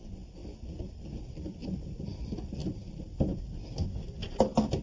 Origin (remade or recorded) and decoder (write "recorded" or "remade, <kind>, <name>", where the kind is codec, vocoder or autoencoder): recorded